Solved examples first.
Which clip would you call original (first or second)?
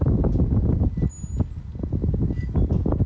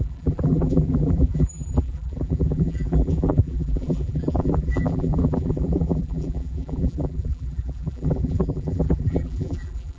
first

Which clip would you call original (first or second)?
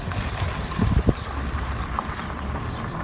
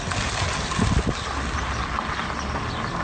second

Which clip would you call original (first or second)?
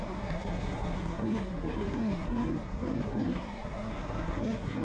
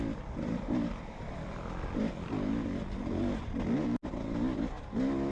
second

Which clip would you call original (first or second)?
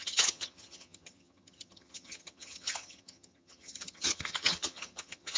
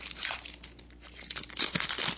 second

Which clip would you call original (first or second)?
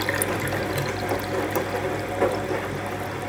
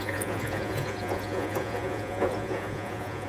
first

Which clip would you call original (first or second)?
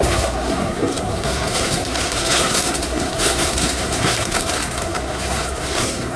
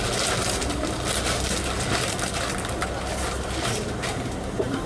second